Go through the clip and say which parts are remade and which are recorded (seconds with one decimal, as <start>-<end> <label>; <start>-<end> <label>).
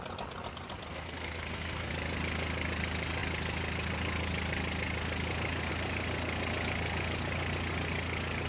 0.0-0.9 recorded; 0.9-1.9 remade; 1.9-8.5 recorded